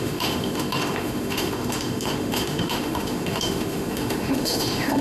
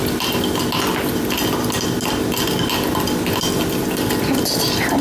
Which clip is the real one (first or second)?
second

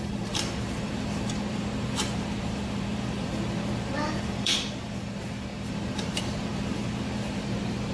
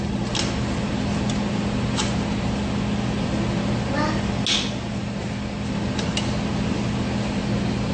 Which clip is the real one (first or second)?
second